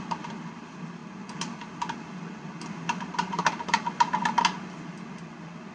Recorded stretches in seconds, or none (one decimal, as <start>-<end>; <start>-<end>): 0.0-5.7